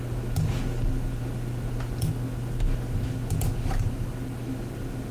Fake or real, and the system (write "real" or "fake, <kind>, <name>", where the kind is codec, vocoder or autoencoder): real